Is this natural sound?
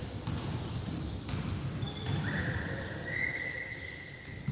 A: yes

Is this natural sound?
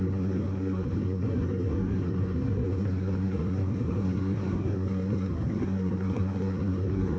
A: no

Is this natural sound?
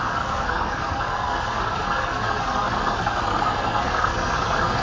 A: no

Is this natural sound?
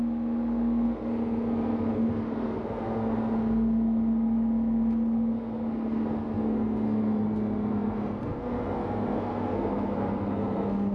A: no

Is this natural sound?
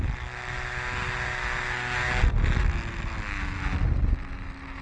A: yes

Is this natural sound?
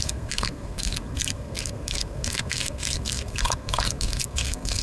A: no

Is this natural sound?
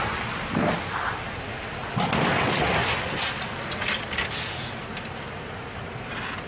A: yes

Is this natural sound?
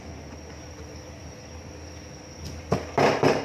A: yes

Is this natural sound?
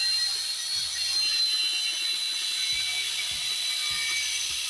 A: yes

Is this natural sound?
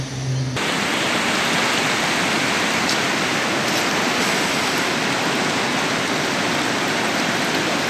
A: yes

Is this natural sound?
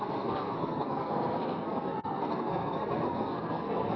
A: no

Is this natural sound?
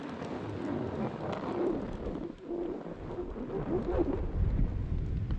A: yes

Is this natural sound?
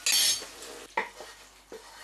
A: yes